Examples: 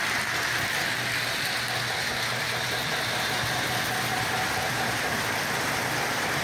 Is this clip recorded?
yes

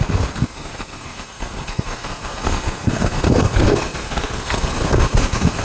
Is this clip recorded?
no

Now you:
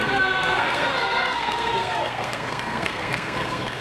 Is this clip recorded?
no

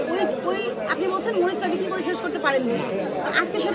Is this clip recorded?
yes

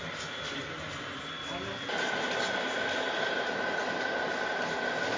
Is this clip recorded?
yes